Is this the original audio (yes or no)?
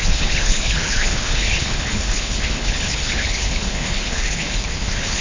no